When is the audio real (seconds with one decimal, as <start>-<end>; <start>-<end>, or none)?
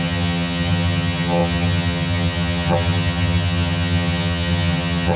none